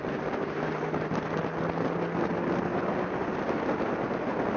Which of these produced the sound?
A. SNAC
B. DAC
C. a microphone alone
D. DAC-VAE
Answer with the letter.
C